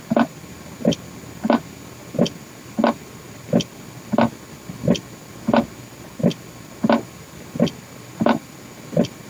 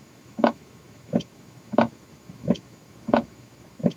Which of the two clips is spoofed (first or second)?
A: second